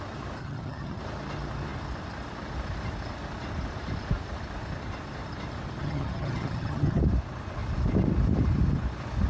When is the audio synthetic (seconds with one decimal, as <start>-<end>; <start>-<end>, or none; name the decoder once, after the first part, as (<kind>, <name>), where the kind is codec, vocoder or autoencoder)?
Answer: 0.4-1.0 (vocoder, HiFi-GAN); 5.8-7.0